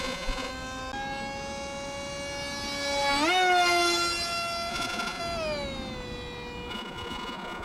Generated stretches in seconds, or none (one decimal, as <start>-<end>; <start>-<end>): 0.0-0.5; 4.7-5.2; 6.7-7.6